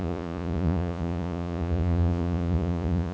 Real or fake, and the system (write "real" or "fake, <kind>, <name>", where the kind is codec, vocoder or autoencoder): fake, vocoder, Vocos